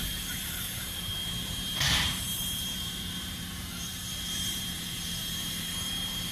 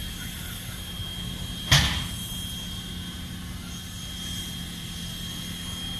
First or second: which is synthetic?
first